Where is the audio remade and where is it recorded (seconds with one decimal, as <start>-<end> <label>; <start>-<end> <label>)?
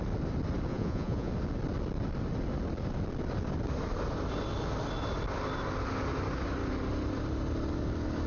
0.0-0.7 recorded; 0.7-1.3 remade; 1.3-8.3 recorded